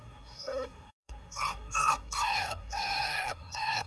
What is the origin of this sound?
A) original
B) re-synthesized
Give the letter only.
B